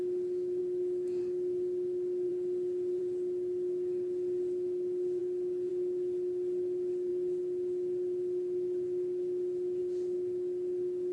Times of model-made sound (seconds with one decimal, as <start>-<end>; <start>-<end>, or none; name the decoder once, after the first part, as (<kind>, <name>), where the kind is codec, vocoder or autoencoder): none